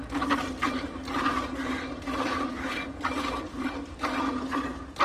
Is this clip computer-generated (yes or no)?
no